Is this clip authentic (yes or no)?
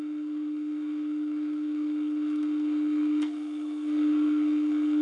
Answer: no